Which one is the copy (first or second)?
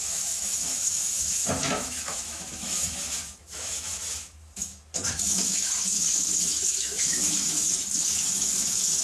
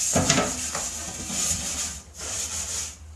first